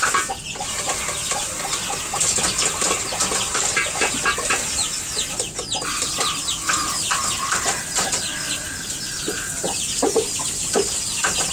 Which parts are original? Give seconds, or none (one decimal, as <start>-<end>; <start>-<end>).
0.0-1.4; 2.1-3.5; 5.2-11.5